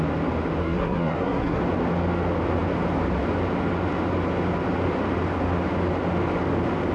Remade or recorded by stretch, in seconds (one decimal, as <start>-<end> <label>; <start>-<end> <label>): 0.0-0.6 recorded; 0.6-1.6 remade; 1.6-6.9 recorded